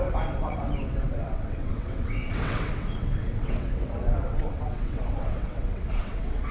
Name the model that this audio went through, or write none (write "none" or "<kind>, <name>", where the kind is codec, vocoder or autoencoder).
vocoder, WaveNeXt